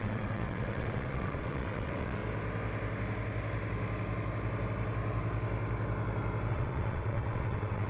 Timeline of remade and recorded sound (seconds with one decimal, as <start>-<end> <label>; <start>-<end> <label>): 0.0-2.2 remade; 2.2-6.5 recorded; 6.5-7.9 remade